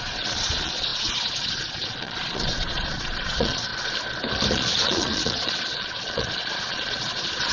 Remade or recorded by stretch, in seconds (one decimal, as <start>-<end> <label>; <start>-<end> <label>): 0.0-3.7 remade; 3.7-4.5 recorded; 4.5-7.5 remade